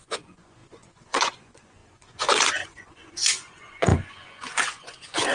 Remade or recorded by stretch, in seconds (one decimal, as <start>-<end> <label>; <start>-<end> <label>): 0.0-5.3 remade